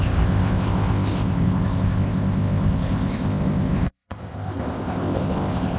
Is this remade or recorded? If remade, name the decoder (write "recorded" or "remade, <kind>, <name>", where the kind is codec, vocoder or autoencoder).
remade, codec, ZipCodec